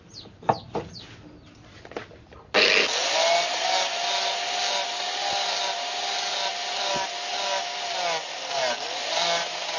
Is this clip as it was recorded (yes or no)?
yes